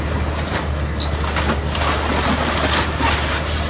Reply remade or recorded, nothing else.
recorded